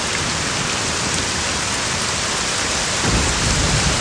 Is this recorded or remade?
recorded